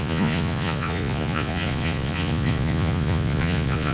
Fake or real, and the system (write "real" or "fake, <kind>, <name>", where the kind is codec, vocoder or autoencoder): fake, vocoder, Vocos